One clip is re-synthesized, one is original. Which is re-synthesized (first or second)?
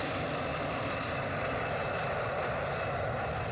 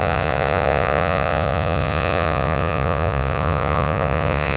second